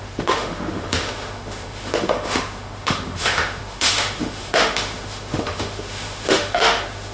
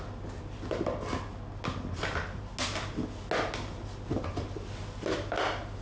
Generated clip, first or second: first